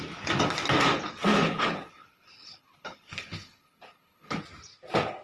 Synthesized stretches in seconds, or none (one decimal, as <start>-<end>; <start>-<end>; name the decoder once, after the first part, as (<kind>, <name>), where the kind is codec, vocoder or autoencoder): 1.3-4.4 (codec, HILCodec)